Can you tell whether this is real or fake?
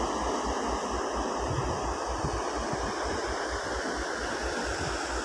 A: real